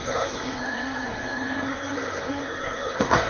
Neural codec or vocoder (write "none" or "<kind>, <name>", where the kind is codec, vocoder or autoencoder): codec, SNAC